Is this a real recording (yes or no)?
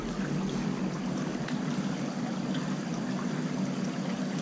yes